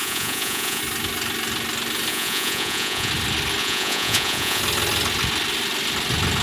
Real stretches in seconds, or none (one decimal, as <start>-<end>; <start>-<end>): 0.8-2.1; 3.1-3.6; 4.6-6.4